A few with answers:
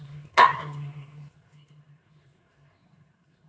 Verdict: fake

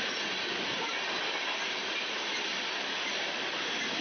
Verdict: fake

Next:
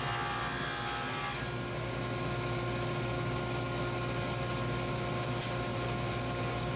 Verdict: real